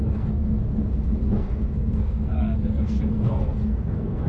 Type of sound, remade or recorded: remade